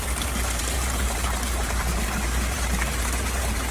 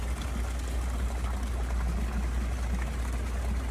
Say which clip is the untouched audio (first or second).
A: second